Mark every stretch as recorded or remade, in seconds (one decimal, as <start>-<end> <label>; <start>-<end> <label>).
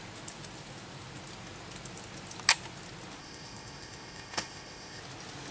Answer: 0.0-3.2 recorded; 3.2-5.0 remade; 5.0-5.5 recorded